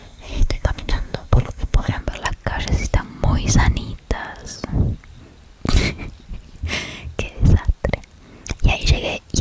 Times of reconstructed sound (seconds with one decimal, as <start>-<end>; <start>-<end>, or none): 0.0-2.0